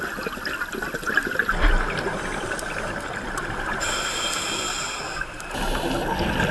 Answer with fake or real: real